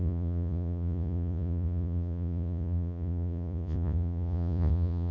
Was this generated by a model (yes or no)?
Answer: yes